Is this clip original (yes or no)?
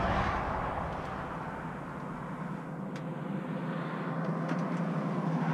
yes